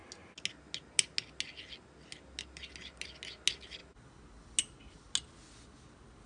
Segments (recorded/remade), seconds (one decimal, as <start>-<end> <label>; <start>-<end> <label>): 0.0-6.3 recorded